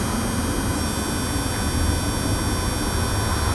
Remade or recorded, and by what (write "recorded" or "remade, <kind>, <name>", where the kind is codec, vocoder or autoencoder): recorded